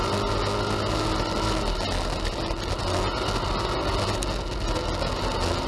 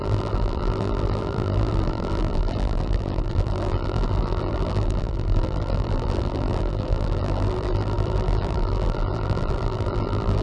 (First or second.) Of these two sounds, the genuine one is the first